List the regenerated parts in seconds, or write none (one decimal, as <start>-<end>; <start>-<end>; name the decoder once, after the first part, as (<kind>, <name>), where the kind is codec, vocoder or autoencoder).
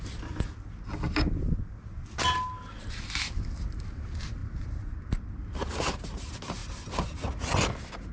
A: none